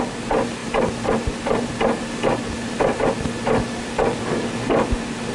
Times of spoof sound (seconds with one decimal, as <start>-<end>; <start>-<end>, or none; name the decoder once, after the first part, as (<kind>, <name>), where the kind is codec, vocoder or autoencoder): none